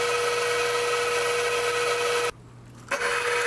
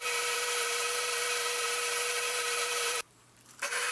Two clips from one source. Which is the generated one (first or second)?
second